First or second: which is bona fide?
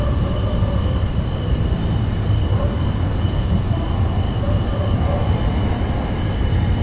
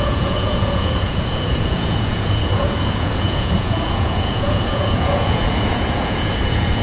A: first